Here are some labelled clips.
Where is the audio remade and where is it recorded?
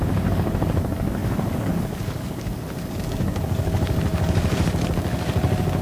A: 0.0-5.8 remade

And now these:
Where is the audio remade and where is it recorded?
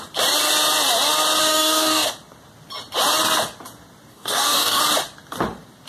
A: 0.0-1.4 recorded; 1.4-2.1 remade; 2.1-4.1 recorded; 4.1-4.8 remade; 4.8-5.9 recorded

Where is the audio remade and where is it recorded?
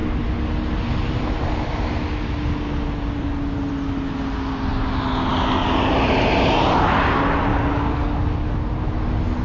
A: 0.0-7.5 recorded; 7.5-8.6 remade; 8.6-9.4 recorded